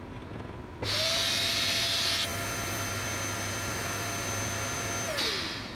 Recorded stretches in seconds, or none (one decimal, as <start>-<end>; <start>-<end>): 0.0-5.7